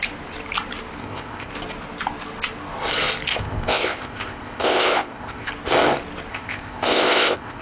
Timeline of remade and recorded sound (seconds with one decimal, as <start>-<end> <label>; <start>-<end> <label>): 0.0-1.0 recorded; 1.0-1.5 remade; 1.5-3.3 recorded; 3.3-5.5 remade; 5.5-6.3 recorded; 6.3-7.6 remade